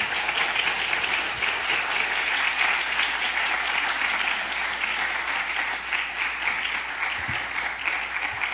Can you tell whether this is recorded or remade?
recorded